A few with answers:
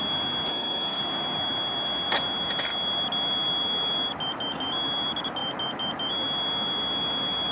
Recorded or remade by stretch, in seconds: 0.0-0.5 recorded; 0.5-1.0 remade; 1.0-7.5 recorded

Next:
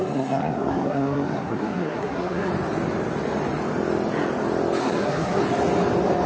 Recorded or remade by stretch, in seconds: 0.0-2.5 remade; 2.5-4.8 recorded; 4.8-5.4 remade; 5.4-6.3 recorded

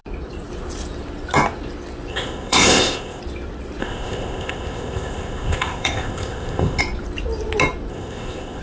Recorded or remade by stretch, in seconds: 0.0-2.1 recorded; 2.1-3.2 remade; 3.2-3.8 recorded; 3.8-6.8 remade; 6.8-7.9 recorded; 7.9-8.6 remade

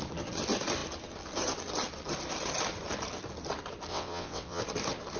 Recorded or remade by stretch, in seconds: 0.0-3.9 recorded; 3.9-4.6 remade; 4.6-5.2 recorded

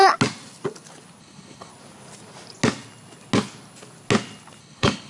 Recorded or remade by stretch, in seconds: 0.0-1.2 recorded; 1.2-1.7 remade; 1.7-4.6 recorded; 4.6-5.1 remade

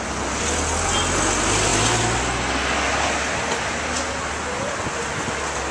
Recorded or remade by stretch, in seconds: 0.0-5.7 recorded